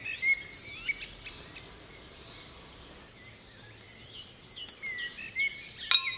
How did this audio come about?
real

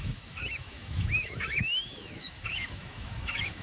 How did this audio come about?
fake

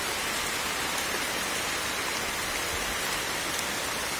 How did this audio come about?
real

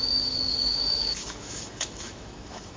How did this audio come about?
fake